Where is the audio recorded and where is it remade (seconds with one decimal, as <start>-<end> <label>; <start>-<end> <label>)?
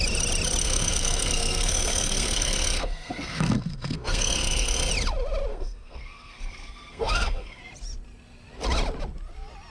0.0-0.6 recorded; 0.6-4.9 remade; 4.9-5.5 recorded; 5.5-7.6 remade; 7.6-9.7 recorded